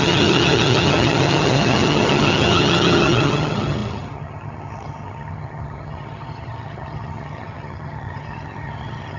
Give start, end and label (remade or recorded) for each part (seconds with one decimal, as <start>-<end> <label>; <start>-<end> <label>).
0.0-9.2 remade